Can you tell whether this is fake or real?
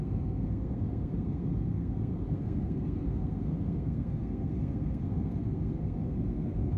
fake